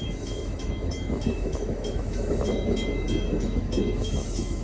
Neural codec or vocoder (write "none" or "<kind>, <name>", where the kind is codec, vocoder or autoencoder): autoencoder, DAC-VAE